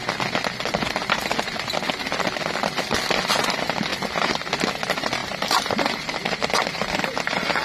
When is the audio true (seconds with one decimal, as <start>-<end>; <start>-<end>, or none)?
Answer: 0.0-5.2; 6.5-7.6

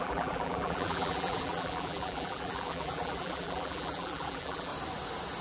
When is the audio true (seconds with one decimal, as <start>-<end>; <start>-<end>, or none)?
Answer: 4.7-5.4

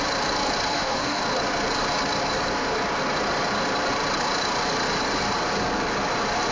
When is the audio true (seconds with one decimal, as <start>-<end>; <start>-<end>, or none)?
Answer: 0.0-0.7; 1.2-6.5